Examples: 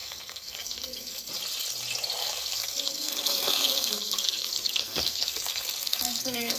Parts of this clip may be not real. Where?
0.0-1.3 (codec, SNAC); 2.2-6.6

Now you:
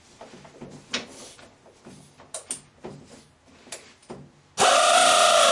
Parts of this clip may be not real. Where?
none

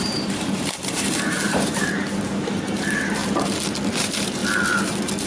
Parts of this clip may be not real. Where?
0.0-3.2 (vocoder, BigVGAN v2); 4.0-4.4

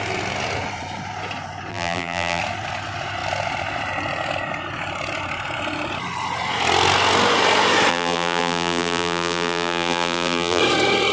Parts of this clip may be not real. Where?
1.7-2.4 (vocoder, BigVGAN v2); 7.9-10.6

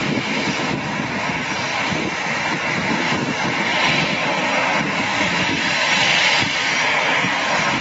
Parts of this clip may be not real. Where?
1.7-2.7 (vocoder, BigVGAN v2); 3.2-4.1

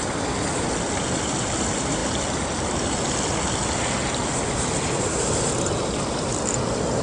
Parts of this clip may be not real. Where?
none

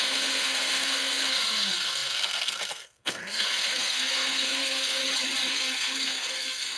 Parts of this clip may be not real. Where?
0.0-5.0 (codec, SNAC); 5.5-6.8